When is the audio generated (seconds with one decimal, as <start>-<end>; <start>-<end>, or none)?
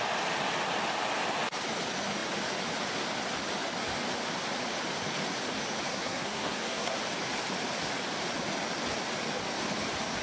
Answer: 5.9-7.0